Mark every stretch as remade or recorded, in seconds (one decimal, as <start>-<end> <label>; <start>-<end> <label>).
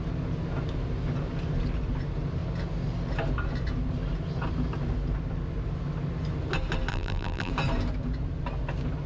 0.0-6.9 recorded; 6.9-7.5 remade; 7.5-9.1 recorded